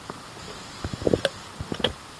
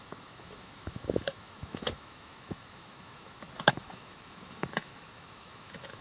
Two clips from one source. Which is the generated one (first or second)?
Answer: second